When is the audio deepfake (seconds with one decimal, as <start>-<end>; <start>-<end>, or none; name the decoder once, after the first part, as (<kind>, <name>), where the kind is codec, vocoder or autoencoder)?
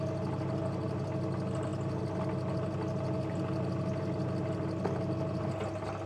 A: none